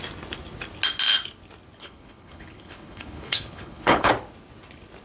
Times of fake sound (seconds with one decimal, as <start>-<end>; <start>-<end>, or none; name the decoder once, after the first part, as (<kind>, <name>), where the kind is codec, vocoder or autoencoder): 1.8-4.1 (codec, HILCodec)